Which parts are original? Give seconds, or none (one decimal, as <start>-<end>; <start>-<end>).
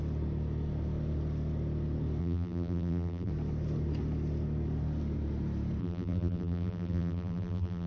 0.0-2.2; 3.3-5.8